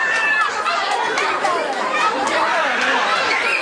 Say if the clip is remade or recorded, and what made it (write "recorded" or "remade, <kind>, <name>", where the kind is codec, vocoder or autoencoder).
remade, vocoder, BigVGAN v2